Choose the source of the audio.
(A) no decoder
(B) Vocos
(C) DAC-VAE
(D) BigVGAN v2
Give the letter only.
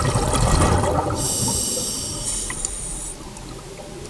A